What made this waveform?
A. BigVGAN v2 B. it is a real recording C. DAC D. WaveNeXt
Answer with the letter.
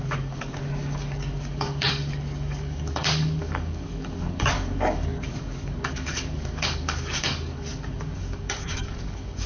C